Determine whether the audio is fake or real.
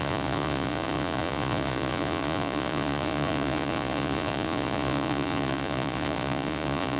fake